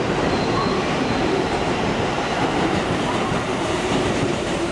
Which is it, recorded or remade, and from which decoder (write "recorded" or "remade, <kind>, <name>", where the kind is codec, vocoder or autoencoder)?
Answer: remade, vocoder, BigVGAN v2